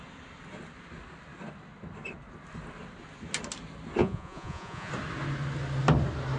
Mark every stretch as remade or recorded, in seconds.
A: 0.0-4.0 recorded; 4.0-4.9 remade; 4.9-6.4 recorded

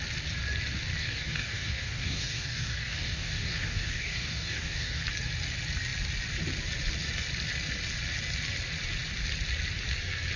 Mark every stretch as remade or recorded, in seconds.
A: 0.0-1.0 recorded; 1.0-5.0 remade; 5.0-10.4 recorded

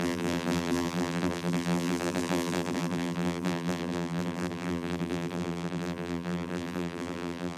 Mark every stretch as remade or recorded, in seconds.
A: 0.0-7.6 remade

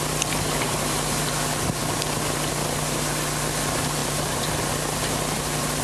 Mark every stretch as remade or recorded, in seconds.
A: 0.0-4.0 recorded; 4.0-4.6 remade; 4.6-5.8 recorded

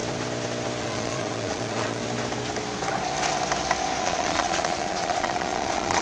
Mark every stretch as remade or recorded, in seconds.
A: 0.0-0.8 recorded; 0.8-2.0 remade; 2.0-4.0 recorded; 4.0-6.0 remade

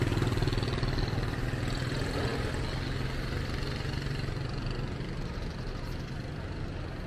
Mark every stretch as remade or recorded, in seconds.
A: 0.0-7.1 recorded